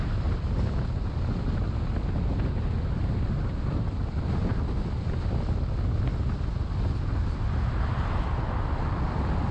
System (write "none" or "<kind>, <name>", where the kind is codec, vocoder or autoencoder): none